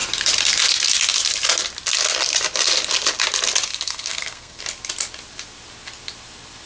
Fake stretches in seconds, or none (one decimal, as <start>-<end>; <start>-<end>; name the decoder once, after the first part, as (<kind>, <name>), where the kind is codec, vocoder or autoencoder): 3.7-4.6 (codec, SNAC)